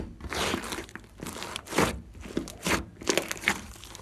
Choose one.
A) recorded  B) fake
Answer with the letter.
B